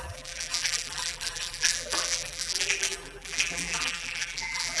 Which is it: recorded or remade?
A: remade